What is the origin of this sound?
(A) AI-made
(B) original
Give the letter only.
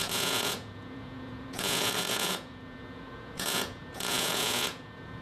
A